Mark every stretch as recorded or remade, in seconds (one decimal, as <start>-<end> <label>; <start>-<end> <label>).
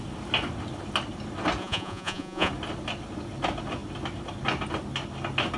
0.0-1.6 recorded; 1.6-2.5 remade; 2.5-5.6 recorded